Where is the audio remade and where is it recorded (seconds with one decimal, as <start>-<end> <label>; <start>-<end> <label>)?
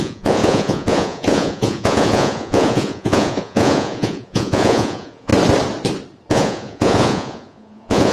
0.0-5.3 remade; 5.3-6.3 recorded; 6.3-8.1 remade